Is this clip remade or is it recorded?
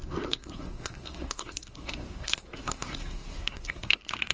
remade